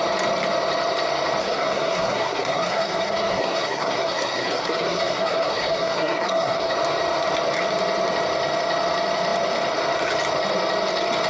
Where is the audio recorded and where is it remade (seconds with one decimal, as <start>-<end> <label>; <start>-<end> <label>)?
0.0-1.4 recorded; 1.4-6.7 remade; 6.7-11.3 recorded